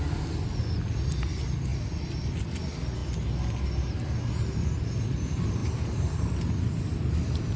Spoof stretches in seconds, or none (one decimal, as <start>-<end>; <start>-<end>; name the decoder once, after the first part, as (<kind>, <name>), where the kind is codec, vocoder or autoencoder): 5.6-7.6 (vocoder, BigVGAN v2)